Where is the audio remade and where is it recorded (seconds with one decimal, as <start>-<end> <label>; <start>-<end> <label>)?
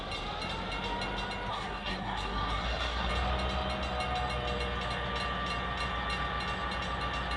0.0-1.5 recorded; 1.5-3.1 remade; 3.1-7.4 recorded